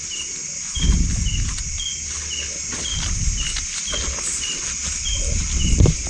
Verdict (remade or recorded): recorded